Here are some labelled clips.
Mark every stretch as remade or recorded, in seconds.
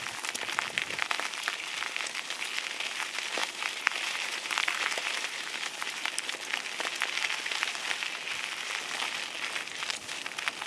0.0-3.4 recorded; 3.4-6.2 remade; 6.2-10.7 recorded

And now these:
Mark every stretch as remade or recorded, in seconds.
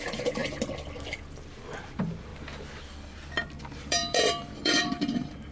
0.0-0.4 remade; 0.4-1.7 recorded; 1.7-2.3 remade; 2.3-3.3 recorded; 3.3-5.5 remade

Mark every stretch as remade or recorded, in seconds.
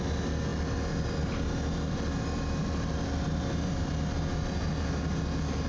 0.0-0.5 recorded; 0.5-3.9 remade; 3.9-5.7 recorded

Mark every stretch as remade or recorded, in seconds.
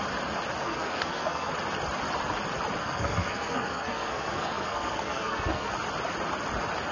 0.0-0.6 recorded; 0.6-1.5 remade; 1.5-2.8 recorded; 2.8-5.7 remade; 5.7-6.9 recorded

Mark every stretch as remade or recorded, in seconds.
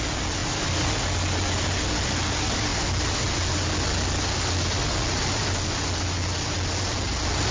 0.0-7.5 recorded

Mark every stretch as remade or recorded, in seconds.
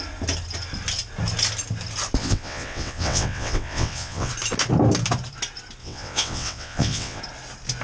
0.0-2.2 recorded; 2.2-4.3 remade; 4.3-5.8 recorded; 5.8-7.2 remade; 7.2-7.8 recorded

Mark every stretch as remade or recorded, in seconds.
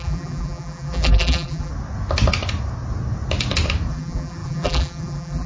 0.0-1.7 remade; 1.7-3.9 recorded; 3.9-5.5 remade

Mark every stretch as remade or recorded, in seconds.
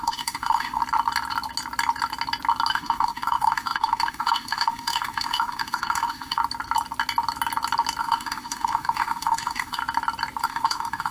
0.0-0.8 remade; 0.8-2.7 recorded; 2.7-6.4 remade; 6.4-8.0 recorded; 8.0-9.8 remade; 9.8-10.4 recorded; 10.4-11.1 remade